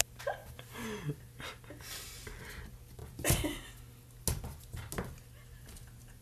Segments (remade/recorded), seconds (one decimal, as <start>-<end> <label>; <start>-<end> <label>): 0.0-6.2 recorded